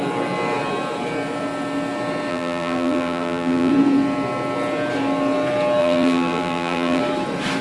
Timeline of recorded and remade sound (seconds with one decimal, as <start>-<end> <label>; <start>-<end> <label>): 0.0-2.3 recorded; 2.3-3.7 remade; 3.7-5.8 recorded; 5.8-7.0 remade; 7.0-7.6 recorded